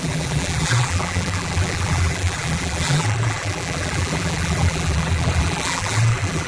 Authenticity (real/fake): fake